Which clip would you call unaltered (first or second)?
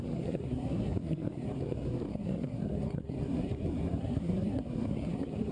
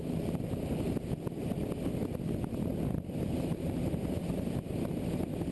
second